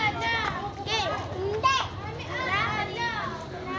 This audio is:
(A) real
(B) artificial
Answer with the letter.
A